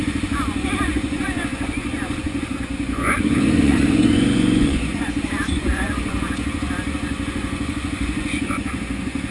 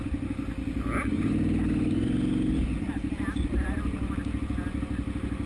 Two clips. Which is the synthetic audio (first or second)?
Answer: first